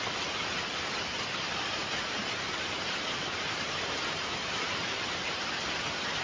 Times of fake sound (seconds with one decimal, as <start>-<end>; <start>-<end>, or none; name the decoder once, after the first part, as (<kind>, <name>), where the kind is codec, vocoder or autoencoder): 1.8-5.5 (vocoder, BigVGAN v2)